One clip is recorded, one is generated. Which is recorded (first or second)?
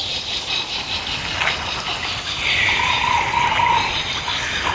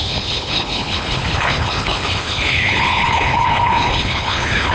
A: first